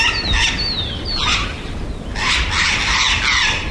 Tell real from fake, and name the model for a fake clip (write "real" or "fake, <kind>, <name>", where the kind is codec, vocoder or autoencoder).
real